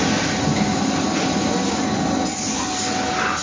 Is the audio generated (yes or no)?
no